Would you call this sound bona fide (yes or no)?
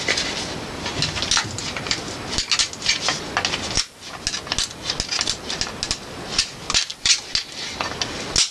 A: yes